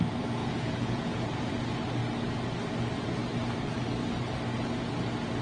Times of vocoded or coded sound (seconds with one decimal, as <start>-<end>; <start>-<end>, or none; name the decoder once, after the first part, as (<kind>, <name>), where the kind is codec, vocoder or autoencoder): 0.4-1.6 (vocoder, Vocos)